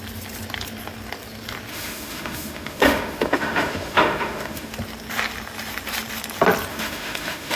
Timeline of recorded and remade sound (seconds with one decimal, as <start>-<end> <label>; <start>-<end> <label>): 0.0-1.7 recorded; 1.7-4.7 remade; 4.7-6.7 recorded; 6.7-7.6 remade